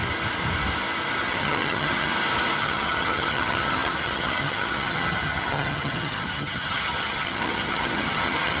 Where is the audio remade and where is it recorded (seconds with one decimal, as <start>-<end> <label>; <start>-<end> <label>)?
0.0-1.2 recorded; 1.2-2.1 remade; 2.1-2.6 recorded; 2.6-8.6 remade